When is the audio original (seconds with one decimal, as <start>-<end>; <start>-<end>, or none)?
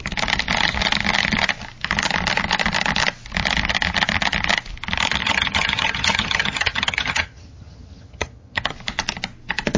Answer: 0.0-5.2; 8.6-9.8